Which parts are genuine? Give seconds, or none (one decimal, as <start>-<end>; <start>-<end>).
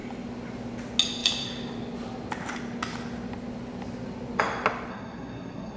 0.0-4.9